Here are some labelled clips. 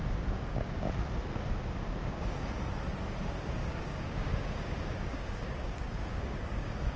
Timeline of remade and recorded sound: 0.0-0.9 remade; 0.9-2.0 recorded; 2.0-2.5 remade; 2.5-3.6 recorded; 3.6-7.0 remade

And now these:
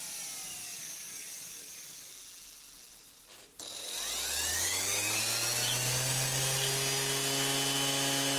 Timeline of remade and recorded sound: 0.0-0.6 recorded; 0.6-2.1 remade; 2.1-4.5 recorded; 4.5-5.2 remade; 5.2-8.4 recorded

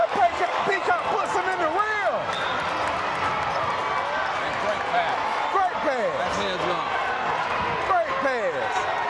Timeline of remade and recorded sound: 0.0-0.9 remade; 0.9-9.1 recorded

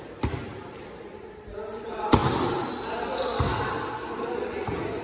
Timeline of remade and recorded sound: 0.0-5.0 recorded